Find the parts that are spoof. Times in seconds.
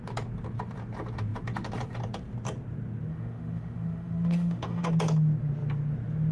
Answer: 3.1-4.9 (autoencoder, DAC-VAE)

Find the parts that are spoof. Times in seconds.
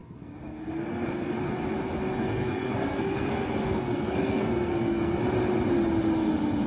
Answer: 0.0-1.5 (codec, SNAC); 2.1-5.2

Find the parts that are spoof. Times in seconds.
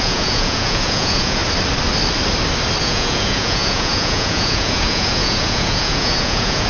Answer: 0.0-1.4 (vocoder, Vocos); 2.8-6.7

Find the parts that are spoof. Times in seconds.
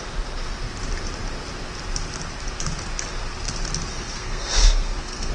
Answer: 3.9-5.3 (codec, SNAC)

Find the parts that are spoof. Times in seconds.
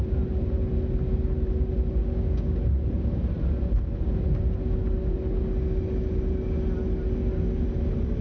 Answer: 2.0-2.6 (codec, DAC)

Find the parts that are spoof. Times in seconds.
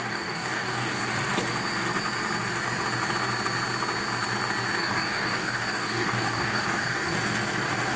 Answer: 0.0-1.1 (codec, DAC); 4.8-7.1